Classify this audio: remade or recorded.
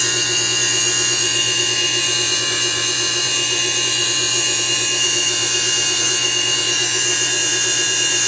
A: remade